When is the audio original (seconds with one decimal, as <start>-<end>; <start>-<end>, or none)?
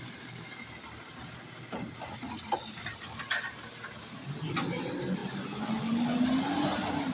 0.0-7.1